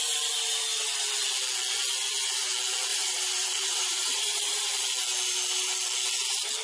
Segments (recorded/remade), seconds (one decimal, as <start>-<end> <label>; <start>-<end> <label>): 0.0-2.9 recorded; 2.9-4.7 remade; 4.7-6.6 recorded